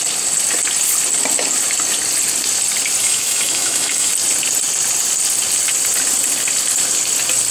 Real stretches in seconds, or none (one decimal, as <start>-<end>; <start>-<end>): 0.0-3.0; 4.1-7.5